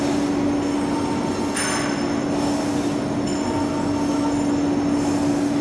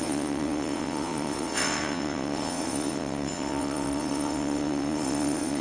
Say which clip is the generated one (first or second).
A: second